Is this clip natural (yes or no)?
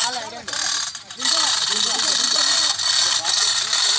no